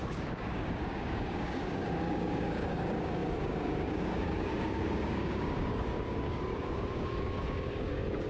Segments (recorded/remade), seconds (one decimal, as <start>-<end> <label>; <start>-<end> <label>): 0.0-8.3 remade